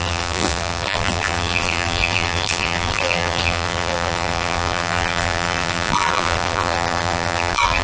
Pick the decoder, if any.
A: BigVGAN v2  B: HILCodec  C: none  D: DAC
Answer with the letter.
A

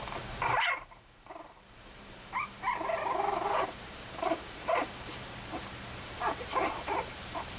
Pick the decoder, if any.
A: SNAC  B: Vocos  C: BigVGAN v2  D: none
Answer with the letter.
C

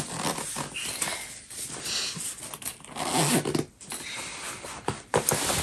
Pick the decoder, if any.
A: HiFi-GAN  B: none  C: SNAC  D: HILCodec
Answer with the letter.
B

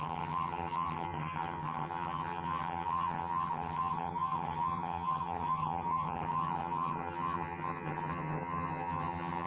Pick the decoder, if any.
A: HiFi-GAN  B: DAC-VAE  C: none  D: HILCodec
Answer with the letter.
A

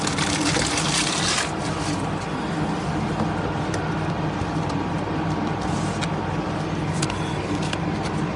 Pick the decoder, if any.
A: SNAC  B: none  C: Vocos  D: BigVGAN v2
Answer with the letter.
B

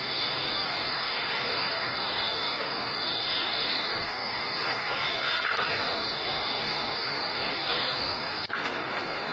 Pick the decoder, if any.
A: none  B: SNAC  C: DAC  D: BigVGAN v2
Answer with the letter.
C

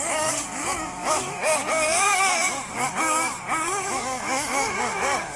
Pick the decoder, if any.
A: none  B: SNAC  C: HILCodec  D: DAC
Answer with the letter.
D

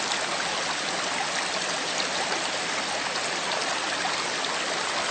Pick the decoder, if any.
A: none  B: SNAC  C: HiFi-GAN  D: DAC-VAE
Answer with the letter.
A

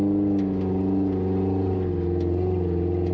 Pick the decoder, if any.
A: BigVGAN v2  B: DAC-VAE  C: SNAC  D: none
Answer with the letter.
D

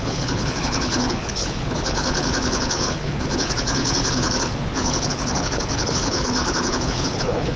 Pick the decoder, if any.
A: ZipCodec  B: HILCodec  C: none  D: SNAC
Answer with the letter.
B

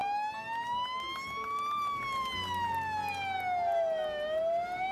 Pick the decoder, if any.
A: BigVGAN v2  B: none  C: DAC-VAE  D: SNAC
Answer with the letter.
B